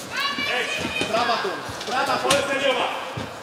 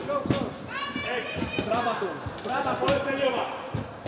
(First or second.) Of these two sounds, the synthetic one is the first